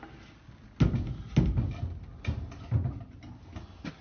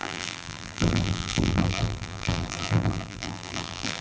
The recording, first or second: first